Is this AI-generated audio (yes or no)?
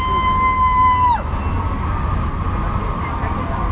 no